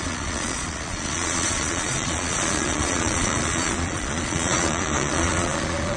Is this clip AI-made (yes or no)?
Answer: yes